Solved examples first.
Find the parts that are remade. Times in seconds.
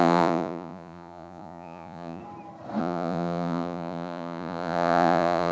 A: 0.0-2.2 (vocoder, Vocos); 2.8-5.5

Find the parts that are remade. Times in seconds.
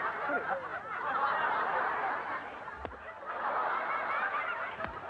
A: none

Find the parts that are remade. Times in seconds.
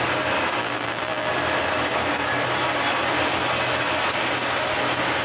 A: 0.6-1.3 (vocoder, BigVGAN v2)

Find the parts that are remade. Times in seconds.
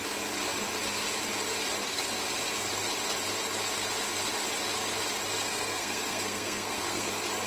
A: 5.4-7.1 (codec, SNAC)